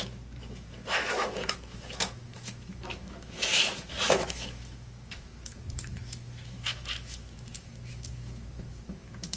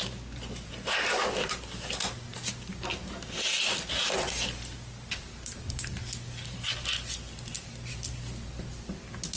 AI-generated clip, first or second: first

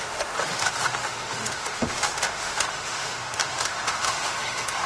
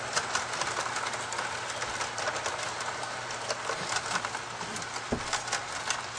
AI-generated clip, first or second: first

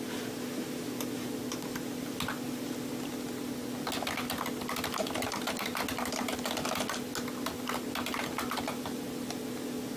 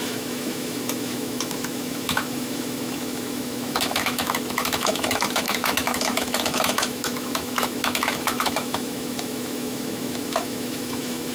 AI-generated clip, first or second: second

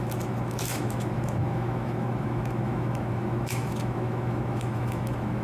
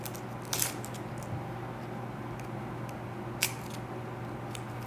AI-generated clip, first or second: first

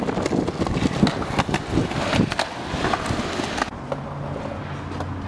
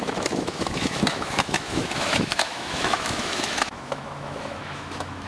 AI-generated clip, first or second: second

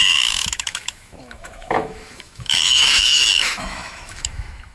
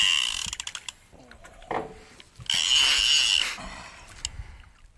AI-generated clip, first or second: first